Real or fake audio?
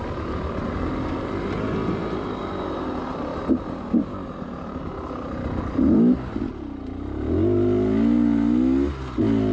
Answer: real